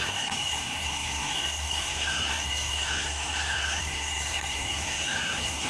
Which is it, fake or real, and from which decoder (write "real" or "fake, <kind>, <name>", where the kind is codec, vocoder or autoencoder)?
fake, codec, SNAC